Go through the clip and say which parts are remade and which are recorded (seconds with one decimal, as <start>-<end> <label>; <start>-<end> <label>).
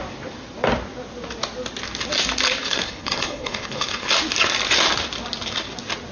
0.0-2.6 recorded; 2.6-4.1 remade; 4.1-6.1 recorded